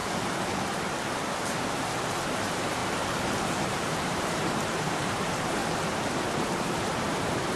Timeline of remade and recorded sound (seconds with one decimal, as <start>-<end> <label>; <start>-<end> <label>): 0.0-1.7 recorded; 1.7-2.8 remade; 2.8-3.4 recorded; 3.4-5.6 remade; 5.6-6.4 recorded; 6.4-7.6 remade